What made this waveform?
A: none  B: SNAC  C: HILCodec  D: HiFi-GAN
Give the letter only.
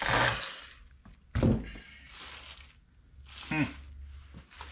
A